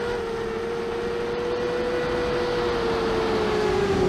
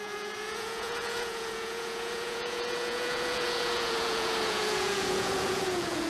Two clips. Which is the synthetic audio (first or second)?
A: second